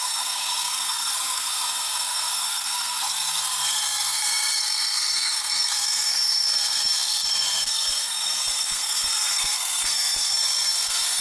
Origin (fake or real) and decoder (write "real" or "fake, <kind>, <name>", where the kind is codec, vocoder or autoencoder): fake, codec, SNAC